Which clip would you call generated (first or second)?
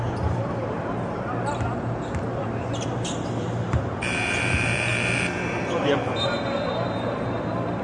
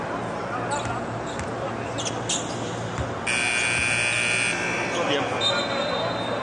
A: first